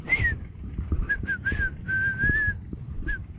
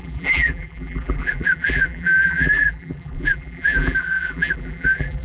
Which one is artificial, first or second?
second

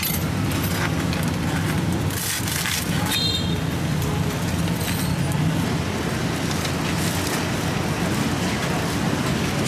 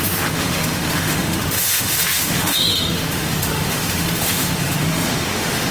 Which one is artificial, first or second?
second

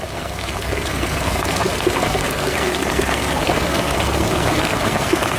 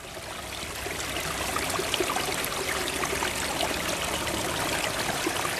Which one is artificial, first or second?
first